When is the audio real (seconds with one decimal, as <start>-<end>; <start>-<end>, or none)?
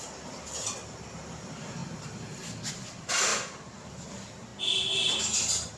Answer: 1.8-2.7; 4.5-5.2